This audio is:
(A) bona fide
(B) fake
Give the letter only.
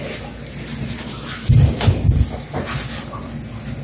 A